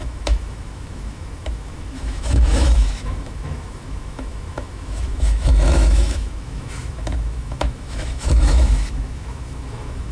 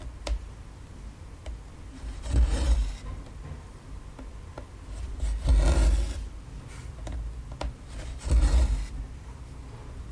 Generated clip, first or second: first